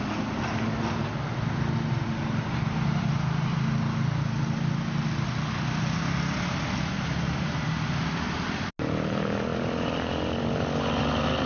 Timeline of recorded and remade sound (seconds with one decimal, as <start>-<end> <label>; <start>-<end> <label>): 0.0-9.5 recorded; 9.5-10.4 remade; 10.4-11.5 recorded